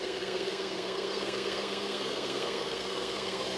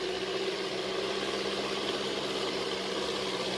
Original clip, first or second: second